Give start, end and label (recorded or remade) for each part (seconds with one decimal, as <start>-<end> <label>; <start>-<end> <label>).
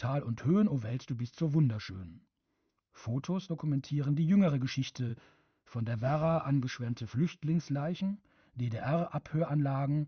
0.0-0.9 recorded; 0.9-1.9 remade; 1.9-2.4 recorded; 2.4-3.5 remade; 3.5-5.1 recorded; 5.1-8.0 remade; 8.0-10.1 recorded